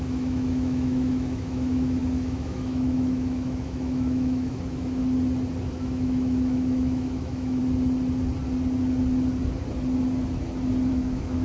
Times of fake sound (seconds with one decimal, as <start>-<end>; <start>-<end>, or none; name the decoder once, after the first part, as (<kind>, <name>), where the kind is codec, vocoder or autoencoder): 0.0-5.0 (autoencoder, DAC-VAE); 5.8-7.6; 10.9-11.4